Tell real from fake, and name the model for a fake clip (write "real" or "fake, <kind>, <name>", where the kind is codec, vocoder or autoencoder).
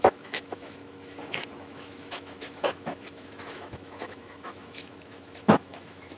fake, autoencoder, DAC-VAE